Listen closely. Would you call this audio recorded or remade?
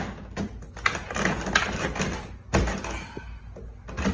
recorded